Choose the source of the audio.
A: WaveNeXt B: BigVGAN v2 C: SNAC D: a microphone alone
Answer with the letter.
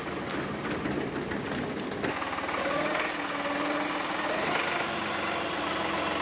D